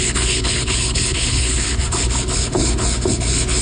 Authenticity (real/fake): fake